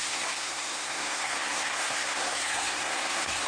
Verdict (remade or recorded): remade